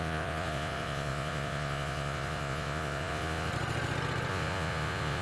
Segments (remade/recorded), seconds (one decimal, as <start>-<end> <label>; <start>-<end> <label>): 0.0-3.5 remade; 3.5-4.3 recorded; 4.3-5.2 remade

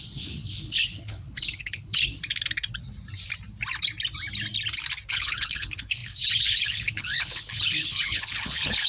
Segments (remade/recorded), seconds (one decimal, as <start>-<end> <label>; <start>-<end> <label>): 0.0-2.2 remade; 2.2-5.1 recorded; 5.1-8.9 remade

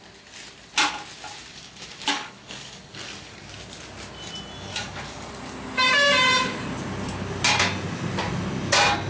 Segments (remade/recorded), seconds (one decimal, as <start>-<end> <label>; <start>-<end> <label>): 0.0-1.5 recorded; 1.5-3.5 remade; 3.5-4.7 recorded; 4.7-5.3 remade; 5.3-9.1 recorded

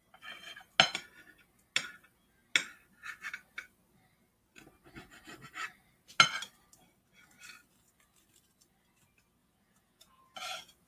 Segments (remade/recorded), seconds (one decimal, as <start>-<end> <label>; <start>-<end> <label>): 0.0-9.4 recorded; 9.4-10.9 remade

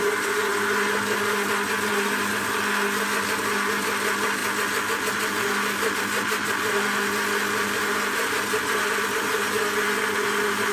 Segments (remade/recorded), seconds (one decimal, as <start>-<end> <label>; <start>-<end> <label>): 0.0-10.7 recorded

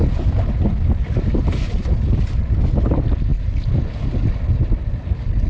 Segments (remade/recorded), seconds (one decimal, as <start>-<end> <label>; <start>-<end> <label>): 0.0-5.5 recorded

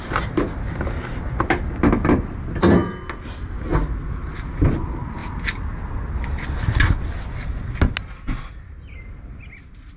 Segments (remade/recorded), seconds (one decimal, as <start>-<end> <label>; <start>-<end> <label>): 0.0-10.0 recorded